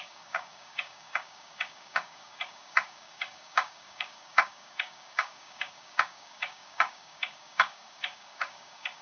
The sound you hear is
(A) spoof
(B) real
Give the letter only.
A